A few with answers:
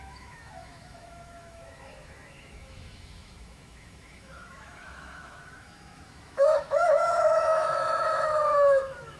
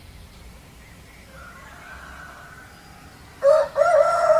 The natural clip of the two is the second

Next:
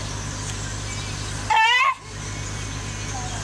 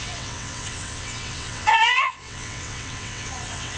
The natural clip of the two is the first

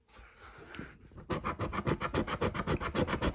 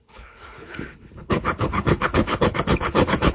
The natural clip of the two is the first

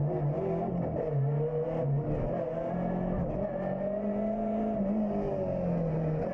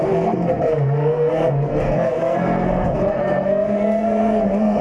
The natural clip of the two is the first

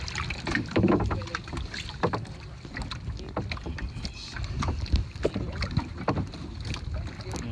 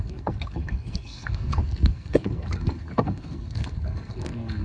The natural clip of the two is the first